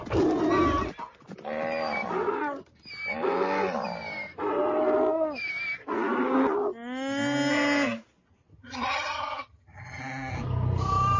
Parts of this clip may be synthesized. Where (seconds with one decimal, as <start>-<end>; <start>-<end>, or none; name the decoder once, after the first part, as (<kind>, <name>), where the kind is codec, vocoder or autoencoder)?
8.5-10.0 (vocoder, HiFi-GAN)

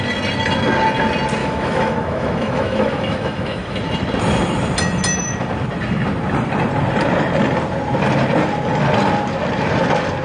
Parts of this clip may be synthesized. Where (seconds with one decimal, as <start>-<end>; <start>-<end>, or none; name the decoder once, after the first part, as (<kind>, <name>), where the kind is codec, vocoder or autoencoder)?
1.4-3.8 (autoencoder, DAC-VAE)